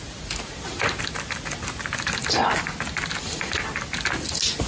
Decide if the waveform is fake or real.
real